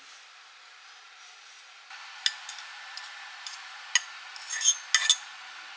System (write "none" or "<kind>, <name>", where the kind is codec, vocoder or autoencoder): none